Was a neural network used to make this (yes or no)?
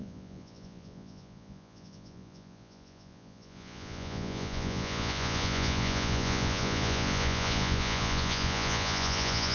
yes